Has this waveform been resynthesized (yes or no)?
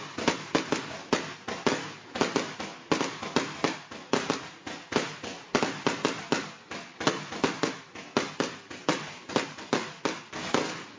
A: no